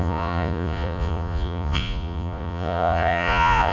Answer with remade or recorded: remade